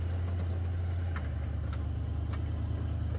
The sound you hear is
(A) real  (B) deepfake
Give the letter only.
A